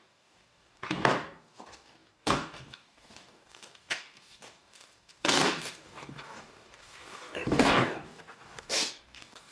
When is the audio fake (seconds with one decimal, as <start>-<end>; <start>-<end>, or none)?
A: 0.0-9.5